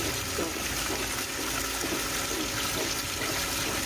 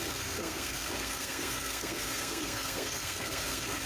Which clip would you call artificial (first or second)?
second